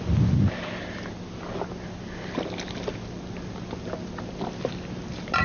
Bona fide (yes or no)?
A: yes